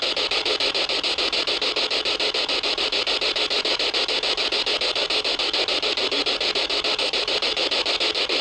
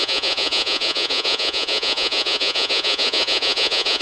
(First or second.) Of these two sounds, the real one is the first